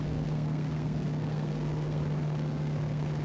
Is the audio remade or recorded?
remade